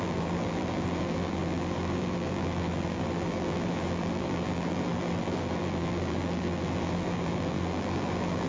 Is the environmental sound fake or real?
fake